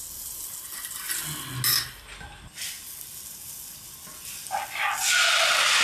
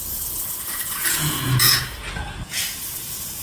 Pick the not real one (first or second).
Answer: second